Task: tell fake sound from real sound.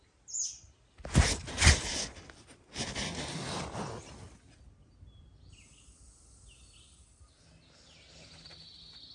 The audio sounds real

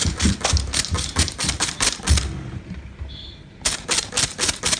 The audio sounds real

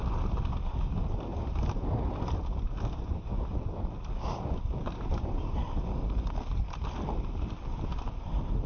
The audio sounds real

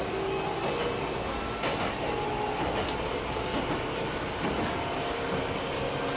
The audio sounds real